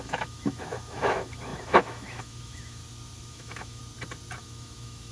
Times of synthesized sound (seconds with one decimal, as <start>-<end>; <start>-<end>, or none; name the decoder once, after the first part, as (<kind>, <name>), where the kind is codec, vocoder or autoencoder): 0.0-2.8 (autoencoder, DAC-VAE); 3.3-3.8; 4.4-5.1

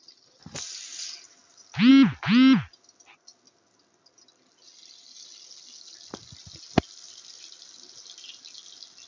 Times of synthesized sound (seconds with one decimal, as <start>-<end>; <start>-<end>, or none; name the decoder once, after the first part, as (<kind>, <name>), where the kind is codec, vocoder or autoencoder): none

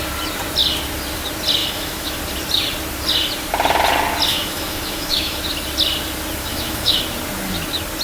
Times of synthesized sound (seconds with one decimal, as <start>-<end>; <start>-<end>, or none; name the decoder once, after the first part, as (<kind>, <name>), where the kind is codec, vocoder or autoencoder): 1.6-2.2 (autoencoder, DAC-VAE); 4.3-5.4; 6.4-7.0

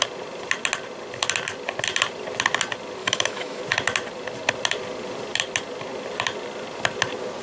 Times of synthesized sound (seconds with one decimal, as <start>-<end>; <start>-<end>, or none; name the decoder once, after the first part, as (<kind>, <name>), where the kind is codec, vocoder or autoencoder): 3.0-3.6 (autoencoder, DAC-VAE)

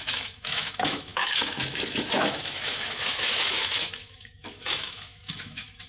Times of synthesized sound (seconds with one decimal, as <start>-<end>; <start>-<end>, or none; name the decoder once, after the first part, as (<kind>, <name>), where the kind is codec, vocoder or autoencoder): 0.0-5.9 (autoencoder, DAC-VAE)

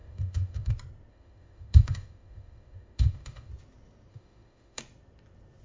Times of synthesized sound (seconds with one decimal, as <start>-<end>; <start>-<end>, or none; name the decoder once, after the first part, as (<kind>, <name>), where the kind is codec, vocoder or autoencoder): 0.0-0.7 (autoencoder, DAC-VAE); 1.1-3.5; 4.1-4.8

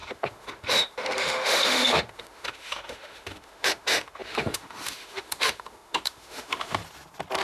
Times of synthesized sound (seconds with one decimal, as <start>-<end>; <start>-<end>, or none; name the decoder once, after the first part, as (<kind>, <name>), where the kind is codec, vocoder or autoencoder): 0.0-6.8 (autoencoder, DAC-VAE)